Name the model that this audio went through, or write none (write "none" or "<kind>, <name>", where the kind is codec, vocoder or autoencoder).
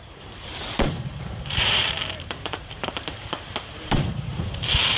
vocoder, BigVGAN v2